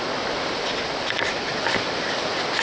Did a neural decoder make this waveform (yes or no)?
no